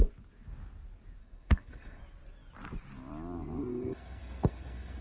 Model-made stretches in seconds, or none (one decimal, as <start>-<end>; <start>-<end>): 1.2-2.0; 3.7-5.0

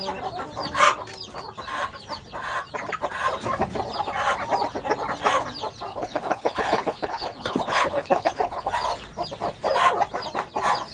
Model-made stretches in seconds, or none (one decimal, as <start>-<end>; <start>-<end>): 5.9-8.7